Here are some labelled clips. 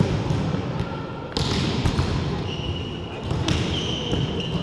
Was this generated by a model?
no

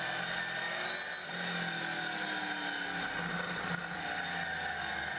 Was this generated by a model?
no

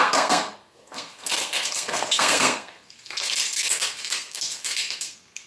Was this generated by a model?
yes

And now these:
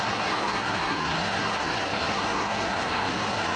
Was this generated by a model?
yes